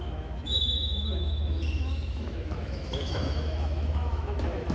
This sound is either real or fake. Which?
fake